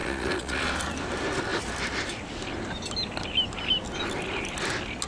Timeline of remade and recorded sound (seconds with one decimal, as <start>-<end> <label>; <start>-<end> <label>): 0.0-0.7 remade; 0.7-5.1 recorded